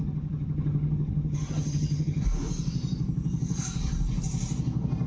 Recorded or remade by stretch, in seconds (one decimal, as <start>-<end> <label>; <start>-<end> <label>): 0.0-2.2 remade; 2.2-5.1 recorded